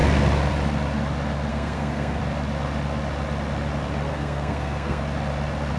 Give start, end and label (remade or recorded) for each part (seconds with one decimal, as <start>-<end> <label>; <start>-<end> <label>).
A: 0.0-1.5 recorded; 1.5-2.2 remade; 2.2-4.1 recorded; 4.1-5.0 remade; 5.0-5.8 recorded